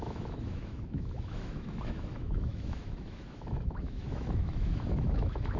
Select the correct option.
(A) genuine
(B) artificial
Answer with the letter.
B